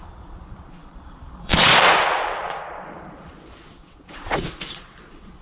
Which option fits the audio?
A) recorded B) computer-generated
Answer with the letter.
B